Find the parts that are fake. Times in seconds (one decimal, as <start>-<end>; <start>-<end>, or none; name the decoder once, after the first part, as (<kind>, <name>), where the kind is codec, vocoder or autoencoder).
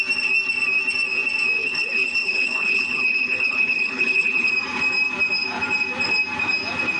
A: 1.6-4.5 (codec, HILCodec)